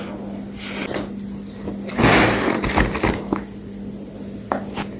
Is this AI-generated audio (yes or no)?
no